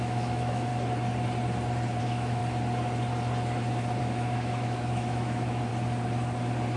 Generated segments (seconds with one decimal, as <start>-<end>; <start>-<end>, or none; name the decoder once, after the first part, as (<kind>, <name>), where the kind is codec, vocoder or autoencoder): 0.0-0.7 (autoencoder, DAC-VAE); 2.0-2.4; 4.0-5.7

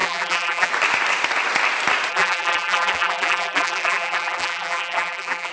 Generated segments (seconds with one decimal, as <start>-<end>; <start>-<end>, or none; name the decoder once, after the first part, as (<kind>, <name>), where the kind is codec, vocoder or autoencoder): 0.0-0.7 (vocoder, BigVGAN v2); 2.1-5.5

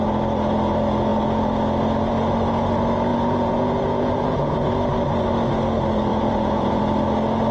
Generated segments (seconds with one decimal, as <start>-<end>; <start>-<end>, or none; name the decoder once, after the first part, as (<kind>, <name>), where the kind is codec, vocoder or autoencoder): 3.1-4.7 (vocoder, Vocos); 6.1-6.8

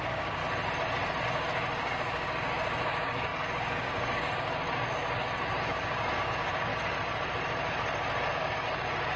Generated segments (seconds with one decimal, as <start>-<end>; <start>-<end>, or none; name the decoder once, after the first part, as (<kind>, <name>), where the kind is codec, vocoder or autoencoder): 0.0-0.4 (codec, DAC); 1.2-6.7; 8.2-9.2

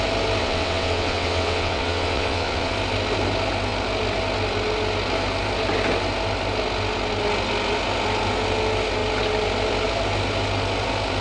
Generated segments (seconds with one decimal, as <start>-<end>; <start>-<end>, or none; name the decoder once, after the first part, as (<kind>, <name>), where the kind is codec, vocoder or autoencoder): 0.4-2.7 (vocoder, WaveNeXt)

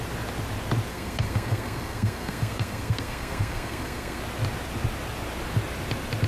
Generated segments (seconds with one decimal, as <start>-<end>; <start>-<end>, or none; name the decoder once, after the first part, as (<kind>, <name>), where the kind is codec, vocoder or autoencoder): 0.9-4.2 (codec, SNAC)

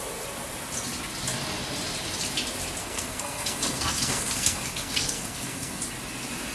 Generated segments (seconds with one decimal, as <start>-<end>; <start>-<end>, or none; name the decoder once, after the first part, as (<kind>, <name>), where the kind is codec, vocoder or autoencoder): 2.8-5.8 (codec, SNAC)

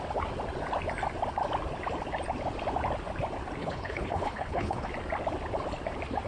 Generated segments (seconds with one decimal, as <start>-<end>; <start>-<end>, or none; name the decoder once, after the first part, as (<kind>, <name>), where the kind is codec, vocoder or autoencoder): 3.6-4.9 (codec, HILCodec)